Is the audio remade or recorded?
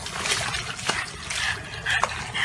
recorded